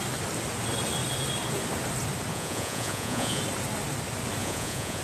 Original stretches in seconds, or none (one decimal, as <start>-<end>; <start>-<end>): 0.0-2.3; 3.4-4.4

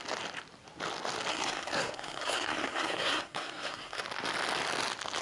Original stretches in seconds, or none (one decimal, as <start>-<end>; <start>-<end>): 0.0-1.3; 4.0-5.2

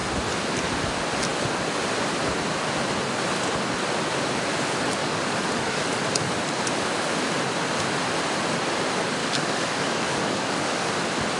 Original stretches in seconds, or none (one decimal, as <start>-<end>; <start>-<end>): 0.0-5.0; 6.0-9.2; 10.9-11.4

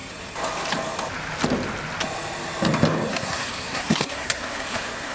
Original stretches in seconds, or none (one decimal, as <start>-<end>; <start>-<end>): 0.0-3.1

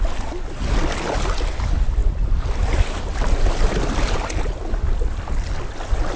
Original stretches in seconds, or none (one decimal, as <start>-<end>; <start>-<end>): 0.0-6.2

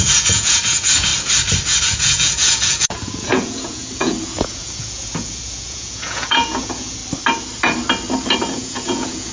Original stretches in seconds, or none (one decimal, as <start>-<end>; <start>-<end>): 1.1-1.8; 7.0-8.5

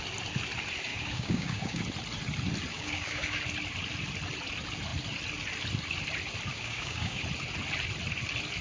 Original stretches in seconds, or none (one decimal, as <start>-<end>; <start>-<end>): 0.0-0.9; 1.8-2.7; 3.4-6.5; 7.2-8.6